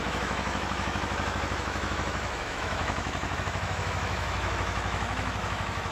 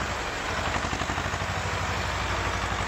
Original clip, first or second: second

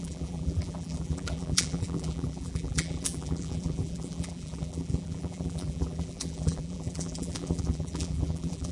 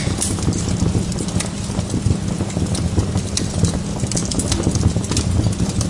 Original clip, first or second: second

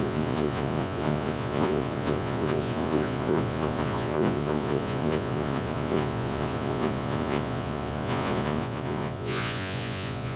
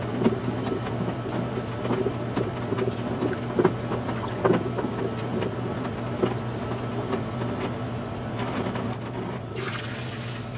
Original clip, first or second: second